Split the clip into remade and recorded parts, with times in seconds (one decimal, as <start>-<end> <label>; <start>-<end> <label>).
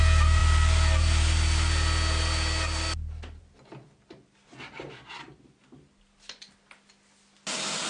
0.0-7.9 recorded